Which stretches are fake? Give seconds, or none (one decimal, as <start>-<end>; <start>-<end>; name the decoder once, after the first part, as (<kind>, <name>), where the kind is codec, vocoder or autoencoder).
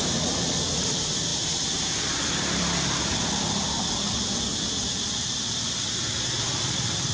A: none